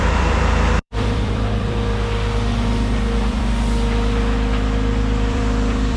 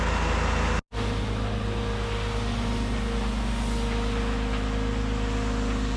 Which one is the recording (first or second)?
second